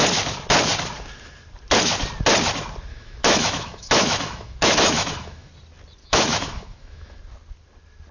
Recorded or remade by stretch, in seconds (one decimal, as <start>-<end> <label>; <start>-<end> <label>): 0.0-2.9 recorded; 2.9-5.5 remade; 5.5-6.0 recorded; 6.0-7.2 remade; 7.2-8.1 recorded

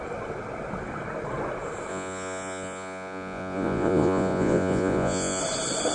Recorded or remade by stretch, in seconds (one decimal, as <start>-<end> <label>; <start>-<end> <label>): 0.0-1.9 recorded; 1.9-5.4 remade; 5.4-5.9 recorded

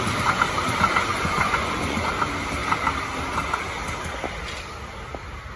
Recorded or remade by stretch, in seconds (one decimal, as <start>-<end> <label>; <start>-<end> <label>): 0.0-1.1 recorded; 1.1-2.1 remade; 2.1-5.6 recorded

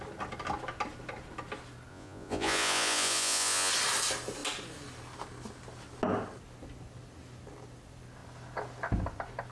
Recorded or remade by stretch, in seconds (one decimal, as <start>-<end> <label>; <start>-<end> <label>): 0.0-1.9 recorded; 1.9-3.7 remade; 3.7-9.5 recorded